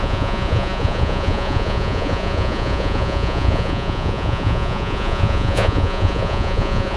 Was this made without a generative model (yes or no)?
no